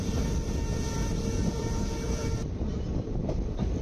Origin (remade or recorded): remade